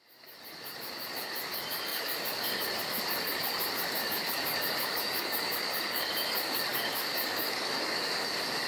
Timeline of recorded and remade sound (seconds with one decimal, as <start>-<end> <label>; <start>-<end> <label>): 0.0-8.7 remade